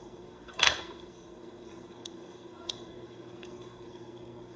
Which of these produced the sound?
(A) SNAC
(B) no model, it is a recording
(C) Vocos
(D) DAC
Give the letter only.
A